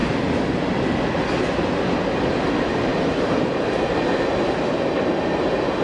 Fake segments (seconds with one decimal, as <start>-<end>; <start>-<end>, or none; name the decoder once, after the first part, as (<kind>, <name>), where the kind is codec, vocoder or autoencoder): 2.9-3.5 (vocoder, BigVGAN v2)